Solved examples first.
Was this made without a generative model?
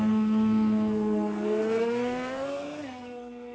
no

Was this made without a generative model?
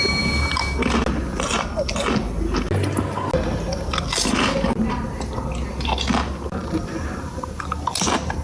yes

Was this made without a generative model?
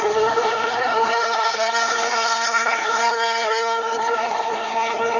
no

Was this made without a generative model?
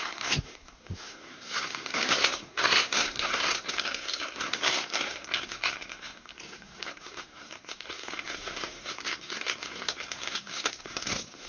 no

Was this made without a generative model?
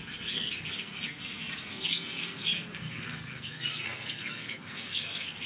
no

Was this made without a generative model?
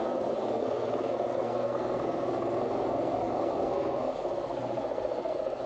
no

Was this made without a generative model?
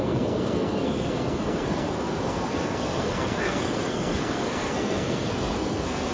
no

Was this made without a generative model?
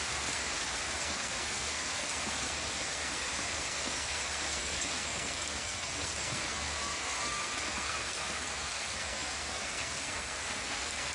no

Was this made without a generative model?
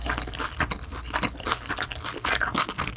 yes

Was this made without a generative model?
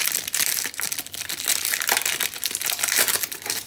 yes